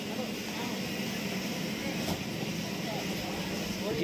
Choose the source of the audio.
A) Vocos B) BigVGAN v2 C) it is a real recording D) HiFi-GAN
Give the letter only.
C